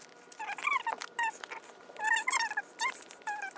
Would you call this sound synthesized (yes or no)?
no